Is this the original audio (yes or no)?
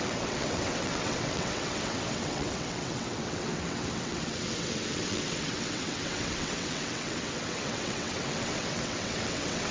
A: no